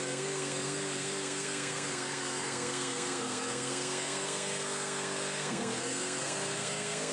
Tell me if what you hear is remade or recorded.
remade